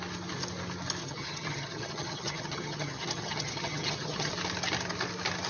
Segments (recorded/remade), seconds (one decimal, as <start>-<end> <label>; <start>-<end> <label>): 0.0-1.0 recorded; 1.0-4.3 remade; 4.3-5.5 recorded